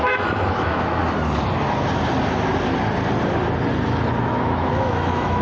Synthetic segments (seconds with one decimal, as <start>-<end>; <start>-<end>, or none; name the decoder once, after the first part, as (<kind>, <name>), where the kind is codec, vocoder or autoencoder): 0.0-1.0 (autoencoder, DAC-VAE); 4.2-5.4